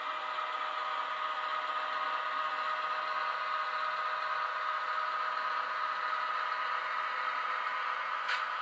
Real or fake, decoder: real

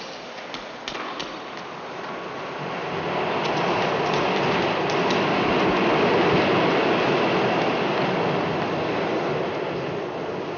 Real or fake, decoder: real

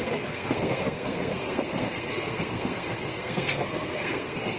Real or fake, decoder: fake, codec, SNAC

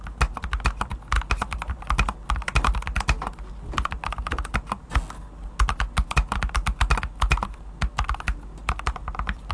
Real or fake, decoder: real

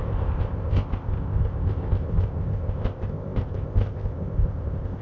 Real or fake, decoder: fake, codec, ZipCodec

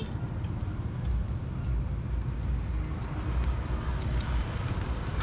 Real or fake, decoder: real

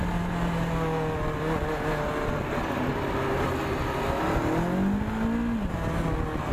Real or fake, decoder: real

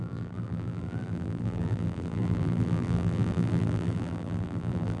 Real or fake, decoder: fake, vocoder, BigVGAN v2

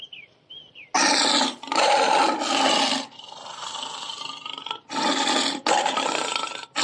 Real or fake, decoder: real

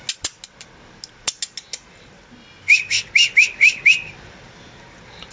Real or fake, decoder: real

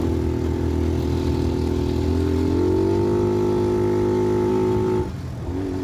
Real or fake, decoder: real